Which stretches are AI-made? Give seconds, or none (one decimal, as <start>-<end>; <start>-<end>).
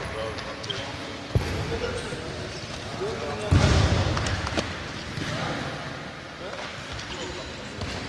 none